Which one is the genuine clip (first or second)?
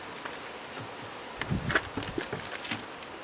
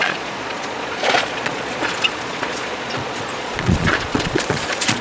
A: first